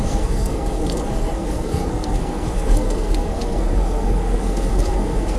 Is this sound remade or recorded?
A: remade